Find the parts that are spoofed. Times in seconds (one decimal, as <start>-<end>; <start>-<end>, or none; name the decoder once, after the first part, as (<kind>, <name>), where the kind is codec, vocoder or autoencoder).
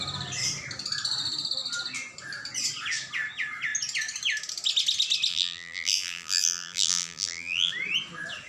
5.3-7.7 (vocoder, BigVGAN v2)